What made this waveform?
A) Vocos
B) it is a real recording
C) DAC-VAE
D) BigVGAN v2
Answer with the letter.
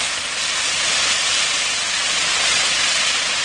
D